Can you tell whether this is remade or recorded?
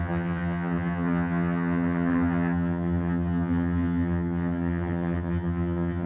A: remade